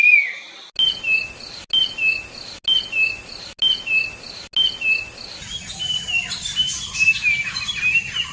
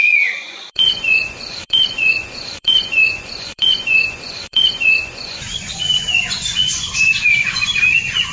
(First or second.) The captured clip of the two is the first